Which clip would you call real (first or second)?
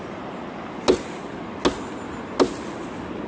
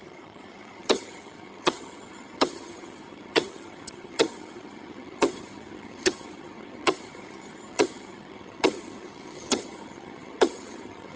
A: first